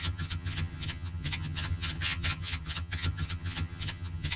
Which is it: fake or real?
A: fake